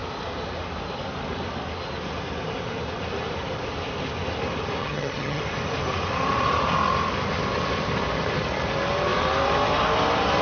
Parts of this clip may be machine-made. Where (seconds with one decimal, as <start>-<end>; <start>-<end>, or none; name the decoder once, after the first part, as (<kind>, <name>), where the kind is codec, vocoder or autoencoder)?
4.8-5.4 (vocoder, HiFi-GAN)